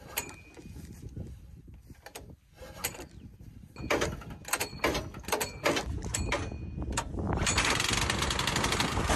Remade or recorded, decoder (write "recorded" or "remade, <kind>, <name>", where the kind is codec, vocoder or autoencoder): recorded